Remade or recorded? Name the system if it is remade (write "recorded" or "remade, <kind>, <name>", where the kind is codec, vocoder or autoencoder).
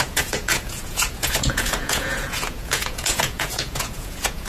remade, vocoder, Vocos